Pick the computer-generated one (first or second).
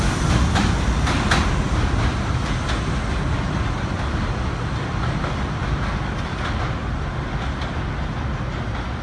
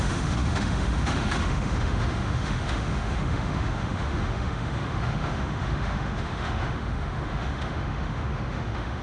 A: second